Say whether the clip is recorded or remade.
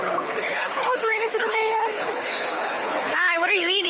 remade